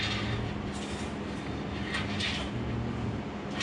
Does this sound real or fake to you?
real